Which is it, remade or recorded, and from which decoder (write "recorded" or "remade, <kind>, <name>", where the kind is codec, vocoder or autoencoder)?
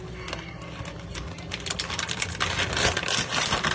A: recorded